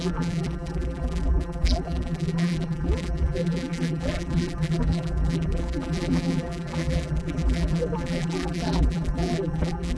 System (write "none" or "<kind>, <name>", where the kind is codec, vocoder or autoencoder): vocoder, BigVGAN v2